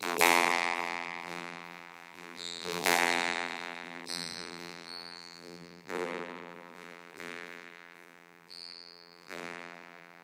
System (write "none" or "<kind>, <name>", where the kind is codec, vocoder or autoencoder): vocoder, BigVGAN v2